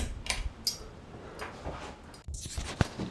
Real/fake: real